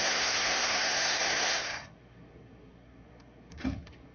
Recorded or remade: remade